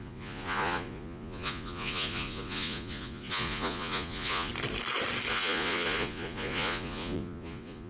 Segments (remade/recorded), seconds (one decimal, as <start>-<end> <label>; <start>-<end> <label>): 0.0-4.5 remade; 4.5-5.3 recorded; 5.3-7.9 remade